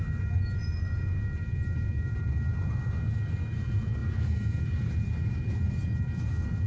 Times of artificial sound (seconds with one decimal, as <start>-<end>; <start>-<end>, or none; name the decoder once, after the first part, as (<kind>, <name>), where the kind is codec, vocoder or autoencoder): none